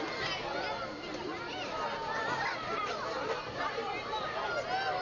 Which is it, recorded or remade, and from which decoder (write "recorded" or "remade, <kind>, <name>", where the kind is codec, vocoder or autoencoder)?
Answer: recorded